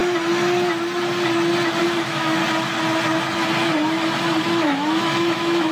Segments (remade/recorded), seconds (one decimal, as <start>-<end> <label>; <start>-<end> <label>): 0.0-1.8 recorded; 1.8-2.4 remade; 2.4-4.4 recorded; 4.4-5.7 remade